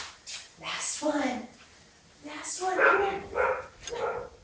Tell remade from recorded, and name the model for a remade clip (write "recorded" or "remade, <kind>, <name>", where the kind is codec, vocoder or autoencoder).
recorded